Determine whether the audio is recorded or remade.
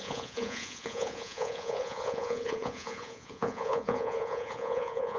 remade